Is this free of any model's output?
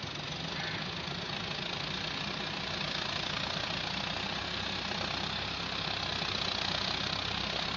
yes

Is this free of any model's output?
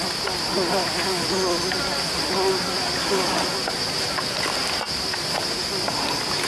yes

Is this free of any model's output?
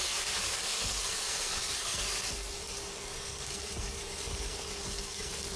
no